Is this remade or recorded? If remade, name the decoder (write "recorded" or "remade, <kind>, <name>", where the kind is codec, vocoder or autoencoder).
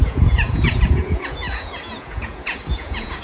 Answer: remade, vocoder, Vocos